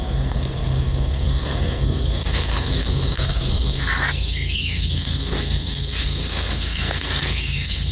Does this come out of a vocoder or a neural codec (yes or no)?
yes